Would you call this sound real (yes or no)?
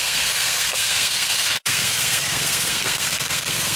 no